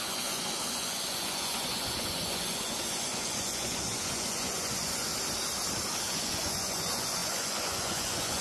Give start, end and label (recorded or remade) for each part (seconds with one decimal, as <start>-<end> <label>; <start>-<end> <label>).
0.0-5.1 remade; 5.1-6.1 recorded; 6.1-8.4 remade